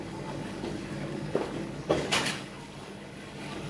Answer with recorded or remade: remade